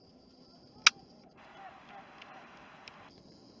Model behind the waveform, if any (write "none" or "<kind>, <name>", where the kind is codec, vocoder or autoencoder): none